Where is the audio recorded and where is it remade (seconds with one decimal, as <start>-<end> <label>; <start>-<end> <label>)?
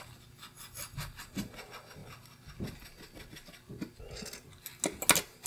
0.0-5.5 recorded